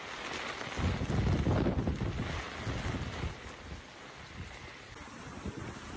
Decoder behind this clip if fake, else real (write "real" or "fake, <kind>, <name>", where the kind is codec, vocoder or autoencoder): real